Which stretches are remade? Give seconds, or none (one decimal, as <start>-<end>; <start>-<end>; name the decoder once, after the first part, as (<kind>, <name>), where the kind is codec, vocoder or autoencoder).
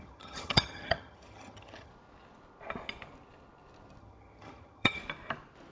0.0-1.9 (vocoder, HiFi-GAN); 4.0-5.0